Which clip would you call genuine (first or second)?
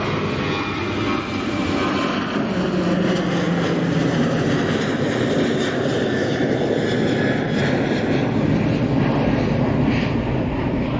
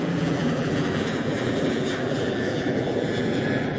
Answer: first